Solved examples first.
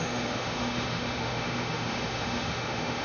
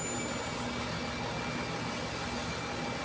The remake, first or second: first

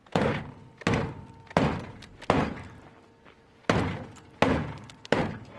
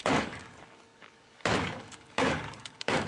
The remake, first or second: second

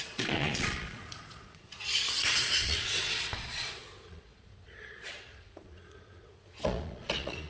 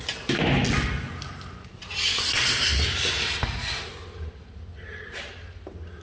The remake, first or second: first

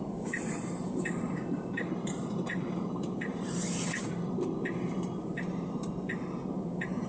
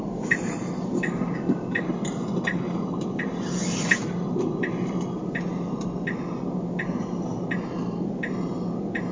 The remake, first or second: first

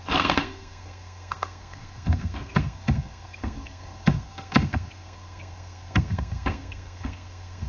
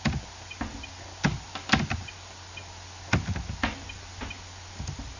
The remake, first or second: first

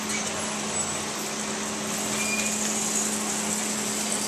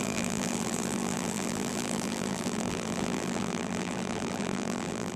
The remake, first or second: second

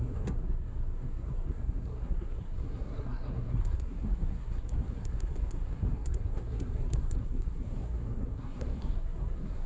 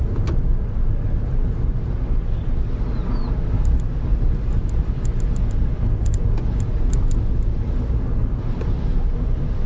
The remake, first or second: first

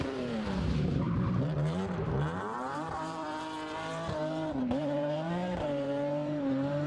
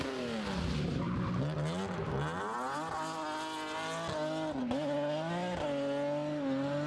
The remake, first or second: first